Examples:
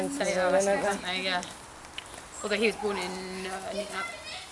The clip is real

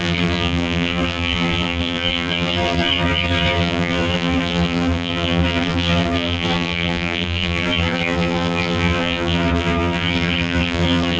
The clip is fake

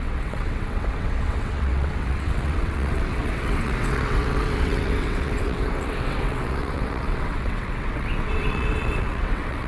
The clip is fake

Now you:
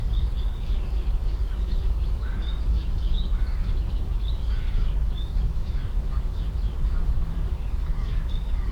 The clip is fake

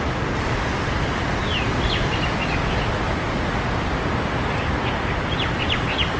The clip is real